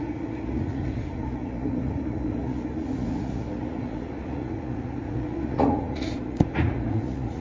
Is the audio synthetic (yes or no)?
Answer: yes